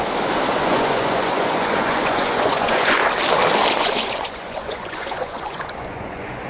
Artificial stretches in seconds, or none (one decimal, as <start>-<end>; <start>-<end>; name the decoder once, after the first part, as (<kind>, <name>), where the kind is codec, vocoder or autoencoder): 0.6-3.0 (vocoder, Vocos); 3.8-6.5